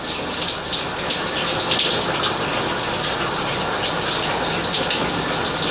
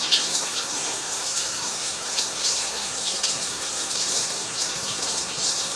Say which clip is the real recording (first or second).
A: first